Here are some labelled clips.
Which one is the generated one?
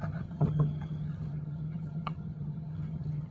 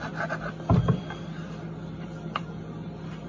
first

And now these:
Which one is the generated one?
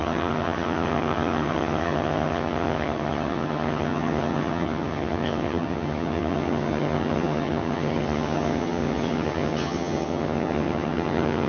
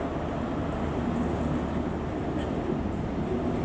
first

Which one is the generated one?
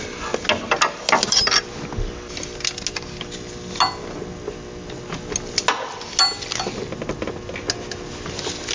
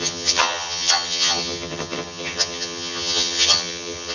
second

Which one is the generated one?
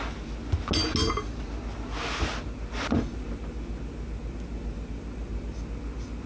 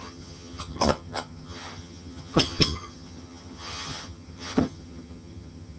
second